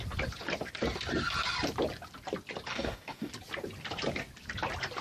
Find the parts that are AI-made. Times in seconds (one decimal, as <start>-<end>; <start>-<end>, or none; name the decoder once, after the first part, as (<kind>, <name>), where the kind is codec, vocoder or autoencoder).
2.7-3.3 (codec, DAC)